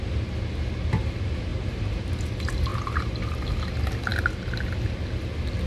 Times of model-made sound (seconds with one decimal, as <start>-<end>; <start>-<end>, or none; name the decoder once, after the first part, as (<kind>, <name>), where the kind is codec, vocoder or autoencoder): 1.5-2.2 (vocoder, BigVGAN v2)